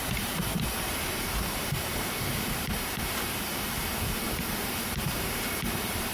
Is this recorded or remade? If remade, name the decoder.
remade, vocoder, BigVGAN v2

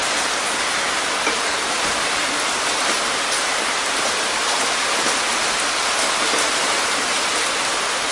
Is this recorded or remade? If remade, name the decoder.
recorded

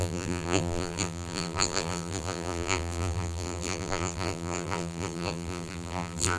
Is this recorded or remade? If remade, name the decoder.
remade, vocoder, BigVGAN v2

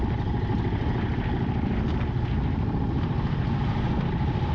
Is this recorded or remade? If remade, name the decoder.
recorded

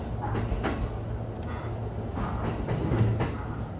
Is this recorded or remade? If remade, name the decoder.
recorded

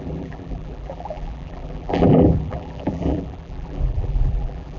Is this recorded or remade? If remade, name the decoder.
remade, vocoder, BigVGAN v2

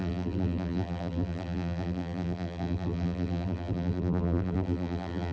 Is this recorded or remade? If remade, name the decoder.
remade, vocoder, BigVGAN v2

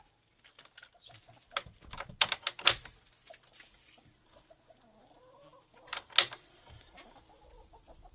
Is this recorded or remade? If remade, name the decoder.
recorded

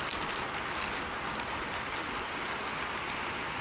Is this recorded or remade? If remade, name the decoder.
remade, vocoder, BigVGAN v2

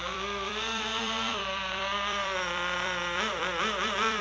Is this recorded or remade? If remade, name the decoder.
remade, vocoder, BigVGAN v2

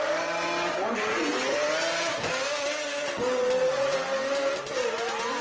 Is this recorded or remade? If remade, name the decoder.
recorded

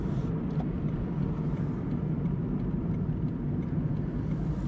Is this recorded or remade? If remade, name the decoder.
remade, vocoder, BigVGAN v2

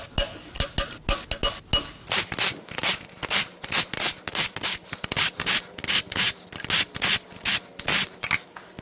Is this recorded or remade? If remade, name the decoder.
recorded